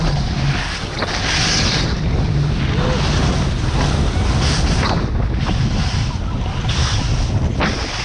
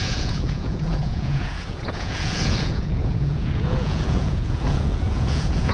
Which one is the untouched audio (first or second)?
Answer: first